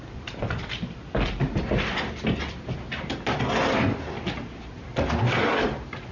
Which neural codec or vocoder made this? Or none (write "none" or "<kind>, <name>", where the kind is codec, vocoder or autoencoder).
none